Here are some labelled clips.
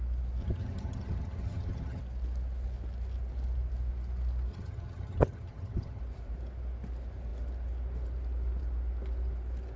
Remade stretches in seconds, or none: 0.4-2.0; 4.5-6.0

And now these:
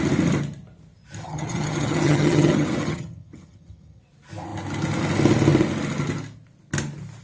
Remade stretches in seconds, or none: 1.2-4.0

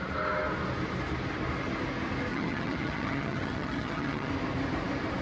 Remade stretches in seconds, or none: 2.3-4.3

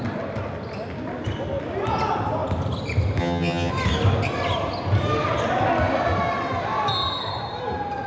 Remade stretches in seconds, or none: 3.2-3.7